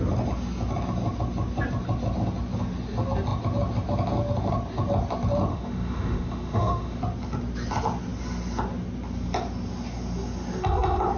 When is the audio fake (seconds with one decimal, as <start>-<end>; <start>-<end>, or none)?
5.5-7.0